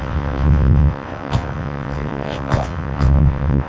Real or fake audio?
fake